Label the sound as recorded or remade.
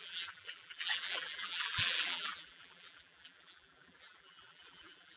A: remade